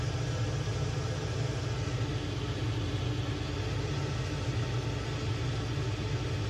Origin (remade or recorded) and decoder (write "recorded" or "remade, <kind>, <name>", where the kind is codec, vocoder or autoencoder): recorded